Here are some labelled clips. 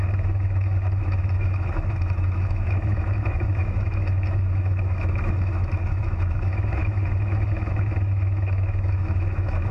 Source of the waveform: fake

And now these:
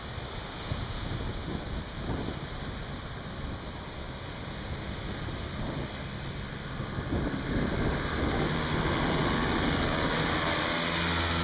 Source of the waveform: real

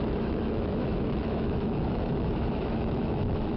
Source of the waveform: fake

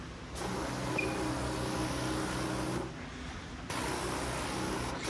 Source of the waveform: real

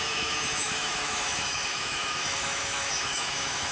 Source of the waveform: fake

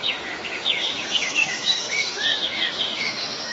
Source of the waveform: fake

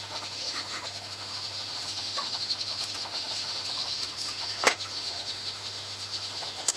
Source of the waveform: fake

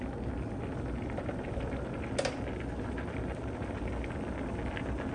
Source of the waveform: real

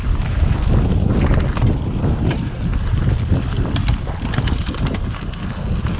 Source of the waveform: real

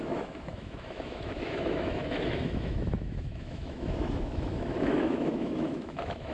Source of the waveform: fake